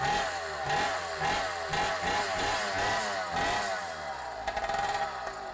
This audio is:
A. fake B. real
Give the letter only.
B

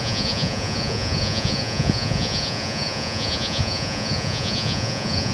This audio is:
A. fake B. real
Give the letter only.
A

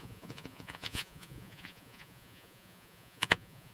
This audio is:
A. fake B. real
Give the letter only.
A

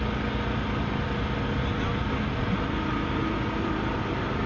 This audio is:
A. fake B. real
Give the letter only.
B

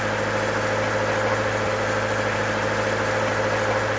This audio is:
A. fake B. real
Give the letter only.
B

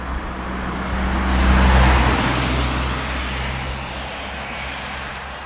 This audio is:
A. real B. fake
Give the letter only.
A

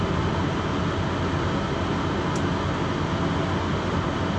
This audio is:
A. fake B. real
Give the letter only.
B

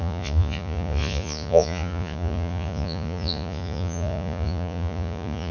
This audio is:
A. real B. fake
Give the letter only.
B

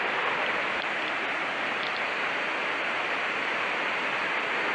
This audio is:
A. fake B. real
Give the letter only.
B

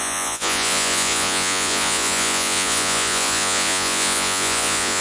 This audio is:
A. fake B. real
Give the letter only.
A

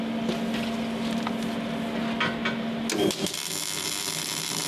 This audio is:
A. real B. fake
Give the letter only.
A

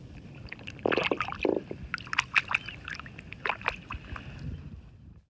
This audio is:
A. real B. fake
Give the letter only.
A